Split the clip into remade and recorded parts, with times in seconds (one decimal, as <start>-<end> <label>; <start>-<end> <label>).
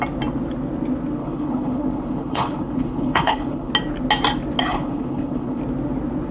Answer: 0.0-1.2 recorded; 1.2-3.7 remade; 3.7-4.7 recorded; 4.7-5.6 remade; 5.6-6.3 recorded